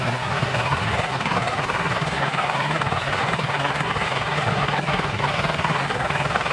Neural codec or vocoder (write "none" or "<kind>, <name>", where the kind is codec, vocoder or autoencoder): codec, SNAC